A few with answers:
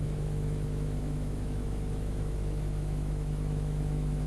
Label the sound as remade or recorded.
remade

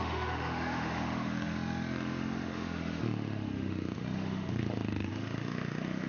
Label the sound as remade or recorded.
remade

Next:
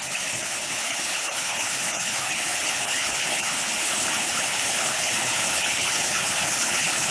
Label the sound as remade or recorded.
remade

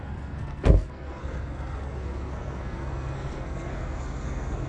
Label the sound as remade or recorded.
remade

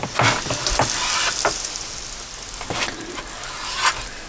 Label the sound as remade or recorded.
recorded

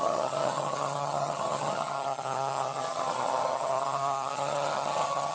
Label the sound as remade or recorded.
remade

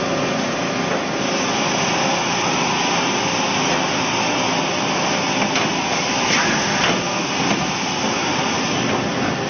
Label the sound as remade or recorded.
recorded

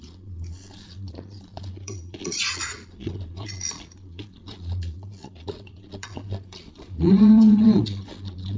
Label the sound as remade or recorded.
remade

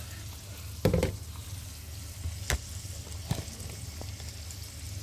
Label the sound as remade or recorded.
recorded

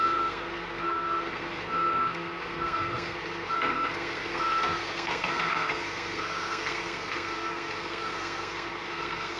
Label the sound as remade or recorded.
remade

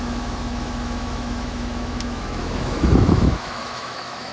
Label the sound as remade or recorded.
remade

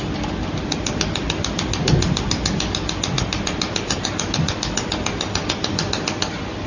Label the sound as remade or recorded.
recorded